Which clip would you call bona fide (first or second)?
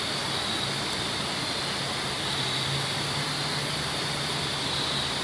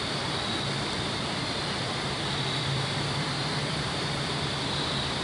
first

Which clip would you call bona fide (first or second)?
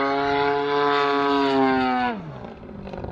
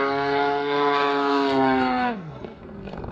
first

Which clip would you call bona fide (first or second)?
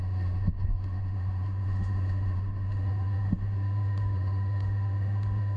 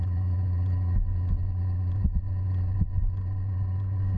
second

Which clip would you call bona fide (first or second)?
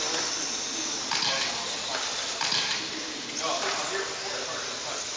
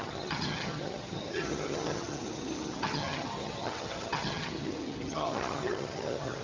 first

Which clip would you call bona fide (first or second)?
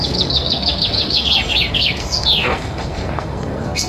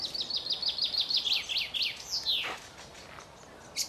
second